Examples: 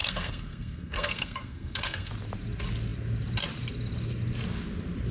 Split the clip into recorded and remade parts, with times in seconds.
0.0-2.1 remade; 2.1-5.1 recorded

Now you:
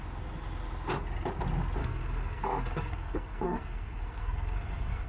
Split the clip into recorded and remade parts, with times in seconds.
0.0-1.8 recorded; 1.8-5.1 remade

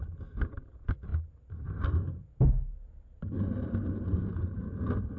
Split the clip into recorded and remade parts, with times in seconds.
0.0-5.2 recorded

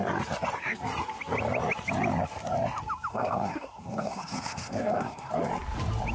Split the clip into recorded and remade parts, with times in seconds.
0.0-3.1 recorded; 3.1-5.3 remade; 5.3-6.1 recorded

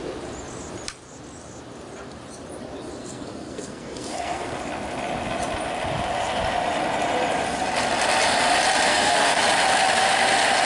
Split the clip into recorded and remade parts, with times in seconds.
0.0-3.0 recorded; 3.0-4.6 remade; 4.6-8.9 recorded; 8.9-9.4 remade; 9.4-10.7 recorded

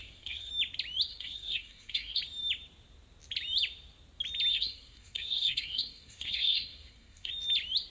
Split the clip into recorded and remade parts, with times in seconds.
0.0-0.5 remade; 0.5-1.1 recorded; 1.1-2.2 remade; 2.2-4.5 recorded; 4.5-7.3 remade; 7.3-7.9 recorded

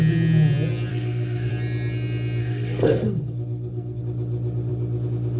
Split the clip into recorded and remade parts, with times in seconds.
0.0-0.9 recorded; 0.9-1.5 remade; 1.5-2.4 recorded; 2.4-4.0 remade; 4.0-5.4 recorded